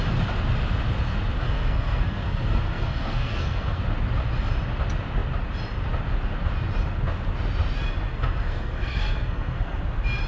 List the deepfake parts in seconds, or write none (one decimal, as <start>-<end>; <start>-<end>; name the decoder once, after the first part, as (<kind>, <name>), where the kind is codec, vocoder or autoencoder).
1.4-3.8 (codec, SNAC); 8.1-9.8

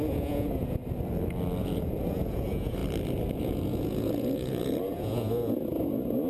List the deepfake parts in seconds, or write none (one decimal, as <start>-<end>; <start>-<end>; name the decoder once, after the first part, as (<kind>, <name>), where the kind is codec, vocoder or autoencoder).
0.0-0.8 (vocoder, Vocos); 1.6-2.8; 3.3-6.3

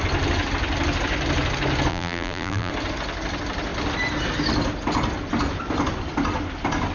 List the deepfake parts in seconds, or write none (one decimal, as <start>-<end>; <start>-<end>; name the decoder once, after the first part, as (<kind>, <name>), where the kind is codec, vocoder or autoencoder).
1.9-2.7 (vocoder, BigVGAN v2)

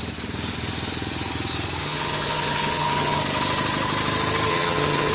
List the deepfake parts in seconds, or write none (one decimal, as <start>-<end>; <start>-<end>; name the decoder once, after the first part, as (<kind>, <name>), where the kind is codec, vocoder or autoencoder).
1.8-3.2 (vocoder, HiFi-GAN); 4.5-5.1

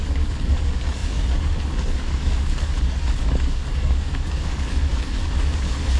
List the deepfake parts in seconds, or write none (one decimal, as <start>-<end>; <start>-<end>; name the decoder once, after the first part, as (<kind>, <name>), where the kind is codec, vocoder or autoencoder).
0.0-6.0 (codec, DAC)

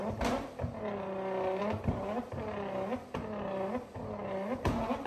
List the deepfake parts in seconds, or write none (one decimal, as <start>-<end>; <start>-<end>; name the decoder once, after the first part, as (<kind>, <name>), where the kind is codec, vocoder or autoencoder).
none

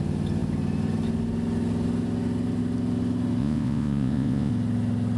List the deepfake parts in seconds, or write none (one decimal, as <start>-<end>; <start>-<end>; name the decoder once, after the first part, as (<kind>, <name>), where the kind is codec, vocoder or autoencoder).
3.4-4.5 (vocoder, Vocos)